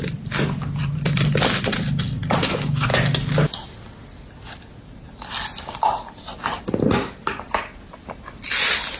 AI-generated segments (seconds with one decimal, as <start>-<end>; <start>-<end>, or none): 0.8-2.0